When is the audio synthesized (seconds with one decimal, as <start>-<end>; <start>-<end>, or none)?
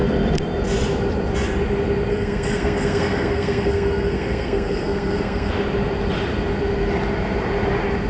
2.1-5.5